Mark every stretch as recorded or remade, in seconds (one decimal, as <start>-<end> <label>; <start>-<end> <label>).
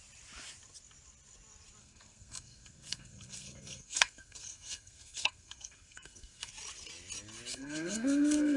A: 0.0-1.8 recorded; 1.8-6.5 remade; 6.5-7.5 recorded; 7.5-8.6 remade